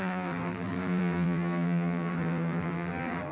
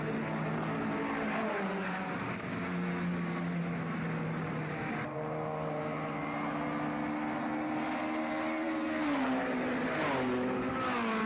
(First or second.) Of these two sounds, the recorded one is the second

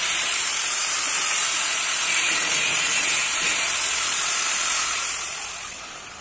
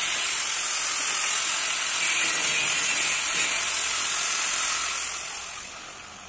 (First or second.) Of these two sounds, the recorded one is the second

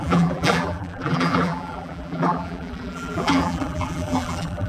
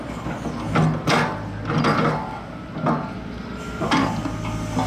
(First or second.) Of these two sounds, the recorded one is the second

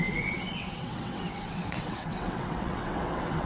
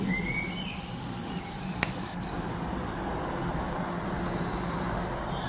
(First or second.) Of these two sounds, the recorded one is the second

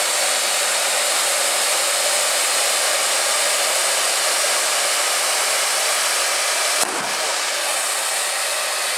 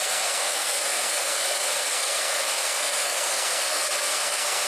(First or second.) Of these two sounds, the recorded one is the first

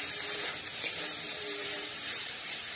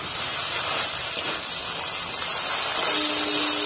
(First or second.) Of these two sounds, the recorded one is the second